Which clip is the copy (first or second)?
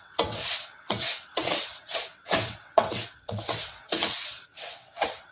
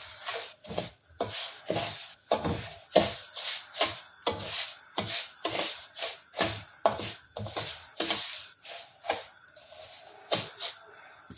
first